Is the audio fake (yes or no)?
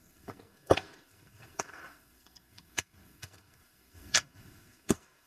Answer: yes